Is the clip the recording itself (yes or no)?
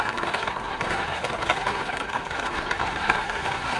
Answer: no